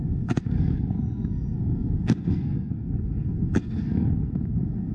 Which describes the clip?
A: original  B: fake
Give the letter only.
B